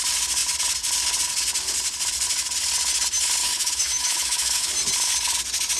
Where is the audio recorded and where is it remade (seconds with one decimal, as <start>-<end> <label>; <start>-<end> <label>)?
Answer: 0.0-3.4 recorded; 3.4-4.7 remade; 4.7-5.8 recorded